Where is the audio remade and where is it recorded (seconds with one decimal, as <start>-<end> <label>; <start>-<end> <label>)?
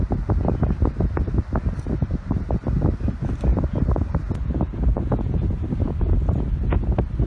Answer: 0.0-7.3 recorded